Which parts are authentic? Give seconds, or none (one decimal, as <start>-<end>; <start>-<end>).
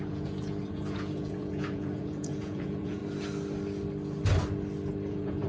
3.0-5.1